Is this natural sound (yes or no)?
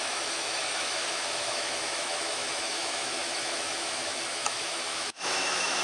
no